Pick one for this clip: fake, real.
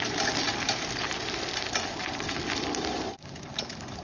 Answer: real